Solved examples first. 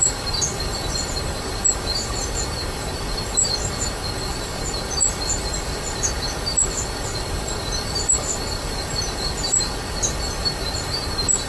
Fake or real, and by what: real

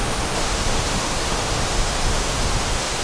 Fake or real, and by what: fake, autoencoder, DAC-VAE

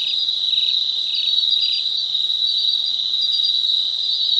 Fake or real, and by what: real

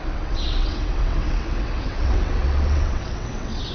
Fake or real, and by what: fake, vocoder, WaveNeXt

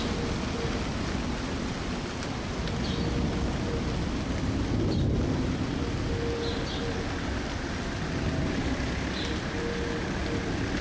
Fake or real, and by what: real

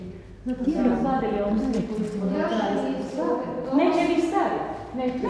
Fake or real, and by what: real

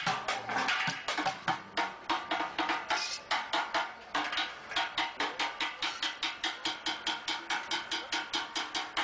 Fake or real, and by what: real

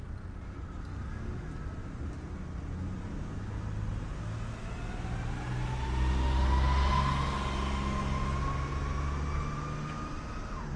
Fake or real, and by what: real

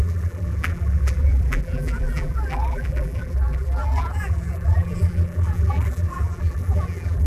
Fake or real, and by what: fake, vocoder, BigVGAN v2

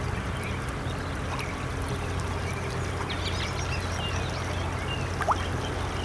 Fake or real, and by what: real